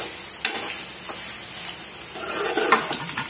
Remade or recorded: recorded